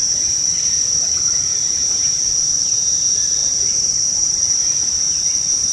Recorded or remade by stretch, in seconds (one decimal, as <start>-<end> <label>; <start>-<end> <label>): 0.0-5.7 remade